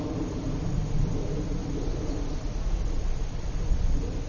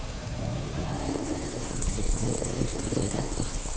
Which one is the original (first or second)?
first